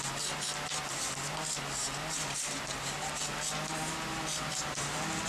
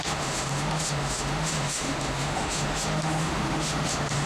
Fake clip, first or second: second